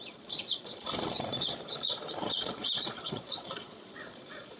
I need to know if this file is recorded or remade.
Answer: remade